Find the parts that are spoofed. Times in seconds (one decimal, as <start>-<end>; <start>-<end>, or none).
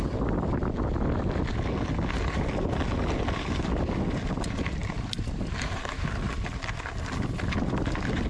4.8-6.0